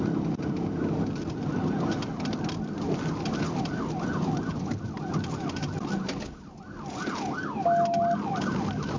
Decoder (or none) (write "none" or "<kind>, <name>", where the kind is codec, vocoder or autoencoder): none